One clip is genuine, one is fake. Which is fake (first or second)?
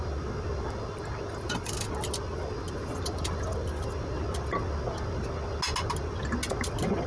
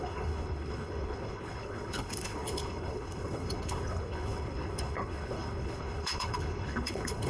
second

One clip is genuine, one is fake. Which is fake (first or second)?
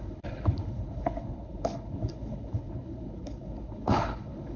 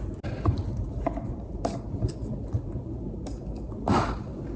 first